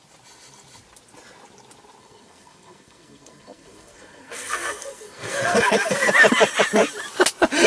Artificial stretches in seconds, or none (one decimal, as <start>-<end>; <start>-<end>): 2.0-6.1